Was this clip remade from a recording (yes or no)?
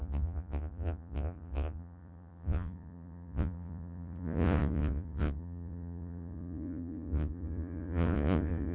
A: yes